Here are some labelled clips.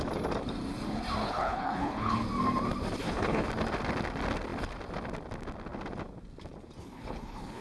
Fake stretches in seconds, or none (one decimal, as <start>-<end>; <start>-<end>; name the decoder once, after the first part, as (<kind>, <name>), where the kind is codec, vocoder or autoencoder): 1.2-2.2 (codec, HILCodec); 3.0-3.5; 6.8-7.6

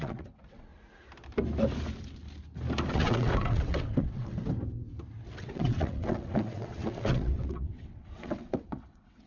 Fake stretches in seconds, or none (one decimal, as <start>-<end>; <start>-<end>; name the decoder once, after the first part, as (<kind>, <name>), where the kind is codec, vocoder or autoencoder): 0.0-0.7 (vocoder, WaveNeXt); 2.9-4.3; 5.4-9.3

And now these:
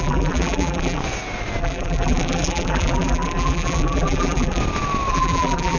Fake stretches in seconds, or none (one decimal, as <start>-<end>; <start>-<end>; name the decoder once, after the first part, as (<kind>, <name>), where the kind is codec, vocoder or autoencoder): 0.0-1.0 (vocoder, BigVGAN v2); 1.6-4.6; 5.1-5.8

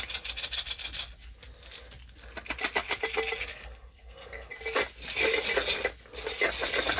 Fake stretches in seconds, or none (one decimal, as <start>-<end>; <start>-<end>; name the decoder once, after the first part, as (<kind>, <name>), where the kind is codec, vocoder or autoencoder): 3.5-4.5 (codec, SNAC)

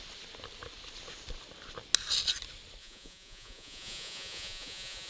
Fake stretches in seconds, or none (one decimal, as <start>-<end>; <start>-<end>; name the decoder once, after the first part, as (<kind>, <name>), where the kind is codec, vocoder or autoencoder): 2.8-5.1 (vocoder, Vocos)

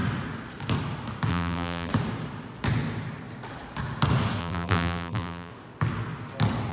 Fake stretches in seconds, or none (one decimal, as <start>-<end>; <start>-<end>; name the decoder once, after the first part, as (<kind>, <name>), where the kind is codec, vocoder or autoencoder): 1.3-1.9 (vocoder, BigVGAN v2); 4.4-5.5